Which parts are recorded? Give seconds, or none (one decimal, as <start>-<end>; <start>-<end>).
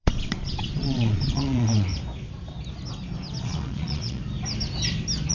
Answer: 1.9-3.4; 4.2-5.3